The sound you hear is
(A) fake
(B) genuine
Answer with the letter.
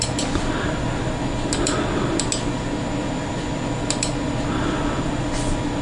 B